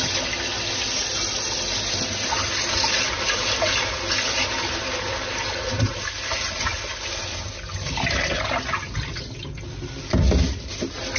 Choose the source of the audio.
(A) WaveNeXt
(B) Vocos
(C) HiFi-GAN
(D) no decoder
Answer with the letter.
D